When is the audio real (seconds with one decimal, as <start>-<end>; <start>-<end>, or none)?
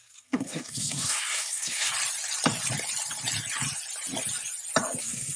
1.9-5.0